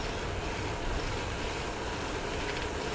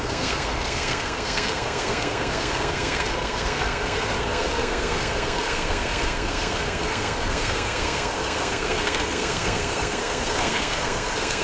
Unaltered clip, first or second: first